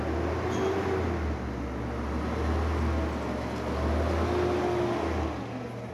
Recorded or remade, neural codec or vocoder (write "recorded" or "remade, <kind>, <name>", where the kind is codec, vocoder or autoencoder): recorded